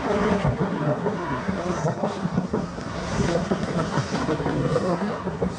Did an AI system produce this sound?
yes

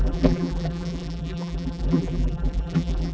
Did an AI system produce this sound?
yes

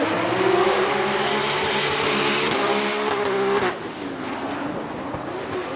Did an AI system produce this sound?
no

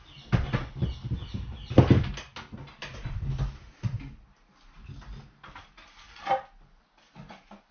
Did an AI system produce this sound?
no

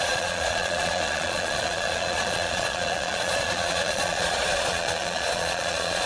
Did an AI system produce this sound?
yes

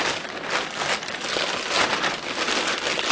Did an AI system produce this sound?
no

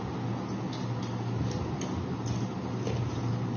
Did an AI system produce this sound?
no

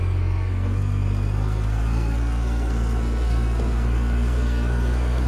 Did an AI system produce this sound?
yes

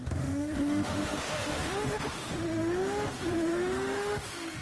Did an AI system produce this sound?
yes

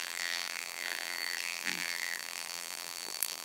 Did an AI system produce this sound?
yes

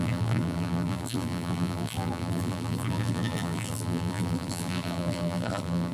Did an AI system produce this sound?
yes